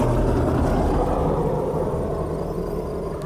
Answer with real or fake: real